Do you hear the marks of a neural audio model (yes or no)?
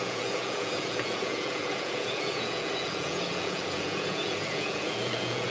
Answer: yes